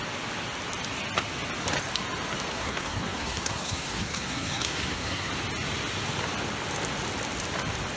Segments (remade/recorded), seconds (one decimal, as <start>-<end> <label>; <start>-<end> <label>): 0.0-2.5 recorded; 2.5-5.3 remade; 5.3-8.0 recorded